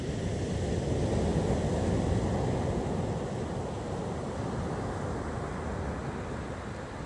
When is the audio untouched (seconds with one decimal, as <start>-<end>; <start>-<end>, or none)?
0.0-7.1